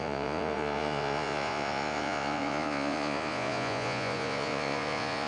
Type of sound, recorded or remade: remade